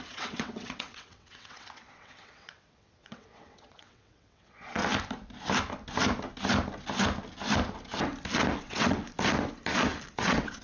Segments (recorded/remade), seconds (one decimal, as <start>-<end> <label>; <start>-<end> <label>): 0.0-4.8 remade; 4.8-8.6 recorded; 8.6-9.0 remade; 9.0-10.2 recorded; 10.2-10.6 remade